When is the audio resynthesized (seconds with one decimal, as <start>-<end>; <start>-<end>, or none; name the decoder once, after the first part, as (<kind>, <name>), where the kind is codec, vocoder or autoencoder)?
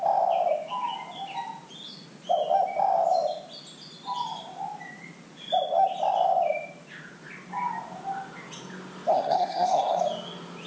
9.1-10.0 (codec, SNAC)